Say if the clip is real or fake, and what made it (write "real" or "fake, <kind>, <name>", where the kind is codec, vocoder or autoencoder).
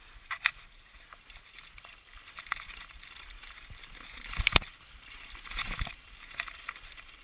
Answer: real